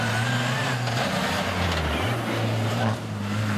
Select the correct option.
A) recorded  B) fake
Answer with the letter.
A